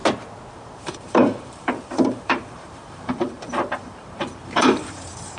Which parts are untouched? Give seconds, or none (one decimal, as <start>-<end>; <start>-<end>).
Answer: 0.0-0.5